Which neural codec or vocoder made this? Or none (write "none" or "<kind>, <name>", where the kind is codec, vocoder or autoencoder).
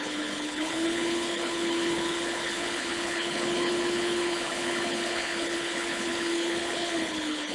codec, HILCodec